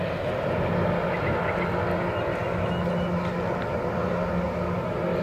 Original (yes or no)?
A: yes